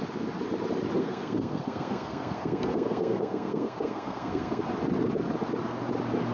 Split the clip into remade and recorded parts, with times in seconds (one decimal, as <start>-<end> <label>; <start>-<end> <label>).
0.0-1.0 recorded; 1.0-4.6 remade; 4.6-6.3 recorded